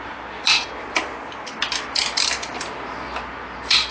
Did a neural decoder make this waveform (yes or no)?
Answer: no